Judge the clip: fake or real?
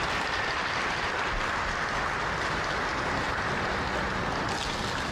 real